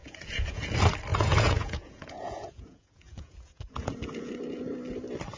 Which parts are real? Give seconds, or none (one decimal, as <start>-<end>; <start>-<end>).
0.7-1.1; 4.3-5.4